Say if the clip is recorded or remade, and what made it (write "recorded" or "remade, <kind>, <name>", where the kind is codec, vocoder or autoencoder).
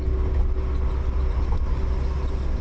recorded